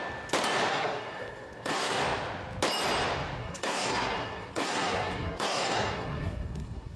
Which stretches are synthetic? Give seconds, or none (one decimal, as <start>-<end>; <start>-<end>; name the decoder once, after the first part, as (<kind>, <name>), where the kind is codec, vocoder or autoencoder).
0.7-2.0 (codec, SNAC); 3.4-7.0